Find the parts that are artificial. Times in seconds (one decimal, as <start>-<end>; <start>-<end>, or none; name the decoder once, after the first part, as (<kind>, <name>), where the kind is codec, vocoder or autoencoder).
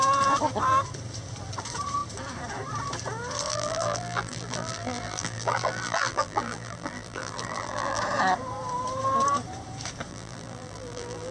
3.5-8.0 (vocoder, BigVGAN v2); 10.1-11.3